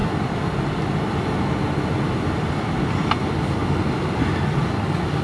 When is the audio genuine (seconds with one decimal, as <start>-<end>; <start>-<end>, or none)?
0.0-5.2